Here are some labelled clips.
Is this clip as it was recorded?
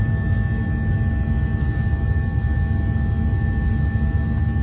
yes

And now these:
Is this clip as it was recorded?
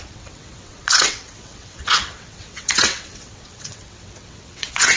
no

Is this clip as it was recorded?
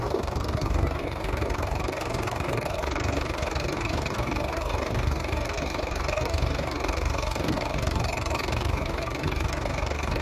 no